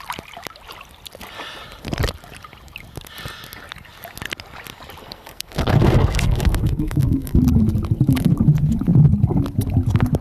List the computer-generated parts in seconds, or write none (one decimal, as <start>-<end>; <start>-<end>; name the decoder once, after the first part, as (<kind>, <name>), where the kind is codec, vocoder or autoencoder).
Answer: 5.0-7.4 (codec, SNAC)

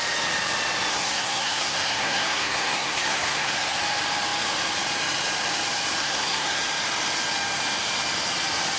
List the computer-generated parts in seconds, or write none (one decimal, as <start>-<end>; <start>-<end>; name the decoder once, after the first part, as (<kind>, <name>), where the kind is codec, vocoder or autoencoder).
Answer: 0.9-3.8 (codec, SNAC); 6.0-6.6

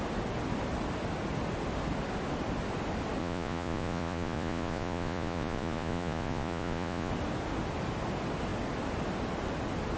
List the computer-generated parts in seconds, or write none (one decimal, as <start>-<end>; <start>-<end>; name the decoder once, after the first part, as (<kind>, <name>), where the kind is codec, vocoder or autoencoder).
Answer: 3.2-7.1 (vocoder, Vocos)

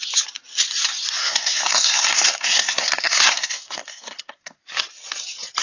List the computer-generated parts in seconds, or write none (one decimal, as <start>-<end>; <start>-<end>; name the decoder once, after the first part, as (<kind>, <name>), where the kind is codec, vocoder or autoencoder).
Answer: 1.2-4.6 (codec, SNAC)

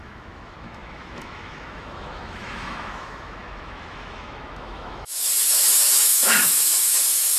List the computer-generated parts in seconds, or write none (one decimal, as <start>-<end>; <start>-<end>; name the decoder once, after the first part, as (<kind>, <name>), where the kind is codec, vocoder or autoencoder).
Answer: 0.0-7.4 (autoencoder, DAC-VAE)